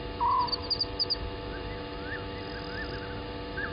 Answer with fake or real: real